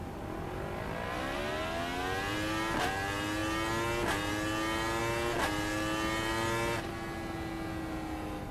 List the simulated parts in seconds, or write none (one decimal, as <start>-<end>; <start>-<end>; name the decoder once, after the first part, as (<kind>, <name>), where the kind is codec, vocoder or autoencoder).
none